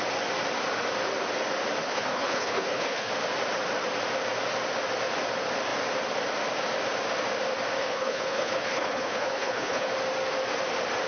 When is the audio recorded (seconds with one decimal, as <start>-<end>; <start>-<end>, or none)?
0.0-1.8; 3.1-7.8; 9.9-11.1